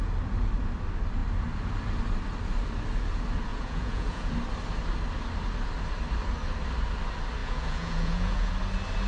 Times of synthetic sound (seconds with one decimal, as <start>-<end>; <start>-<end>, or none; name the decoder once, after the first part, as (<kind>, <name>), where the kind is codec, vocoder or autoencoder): 3.5-4.3 (vocoder, Vocos); 7.4-8.5